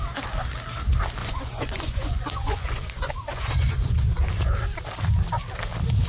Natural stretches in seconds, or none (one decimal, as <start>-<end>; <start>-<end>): 0.0-1.2; 4.3-6.1